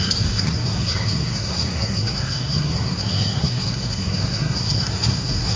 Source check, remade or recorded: remade